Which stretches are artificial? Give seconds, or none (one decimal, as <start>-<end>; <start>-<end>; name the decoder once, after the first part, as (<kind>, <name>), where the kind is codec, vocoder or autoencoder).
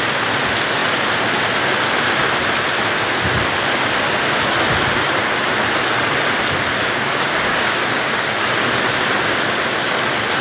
6.8-8.5 (codec, DAC)